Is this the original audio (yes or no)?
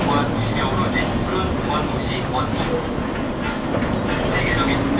yes